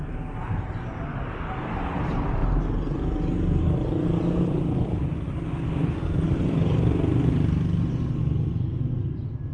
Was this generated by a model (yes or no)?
no